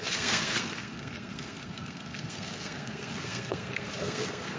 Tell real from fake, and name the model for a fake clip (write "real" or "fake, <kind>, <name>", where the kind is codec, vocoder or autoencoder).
fake, codec, SNAC